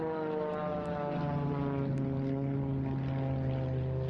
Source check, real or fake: real